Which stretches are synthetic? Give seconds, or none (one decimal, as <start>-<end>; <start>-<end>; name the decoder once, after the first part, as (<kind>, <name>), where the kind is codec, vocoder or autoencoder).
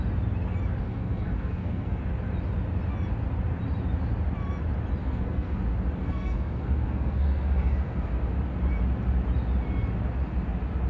0.8-2.0 (codec, SNAC); 5.0-5.6; 6.0-8.3